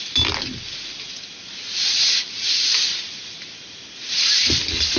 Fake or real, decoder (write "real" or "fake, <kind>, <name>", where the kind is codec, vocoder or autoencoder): real